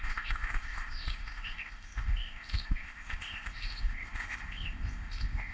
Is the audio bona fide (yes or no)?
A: no